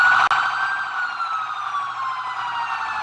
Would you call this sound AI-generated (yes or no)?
no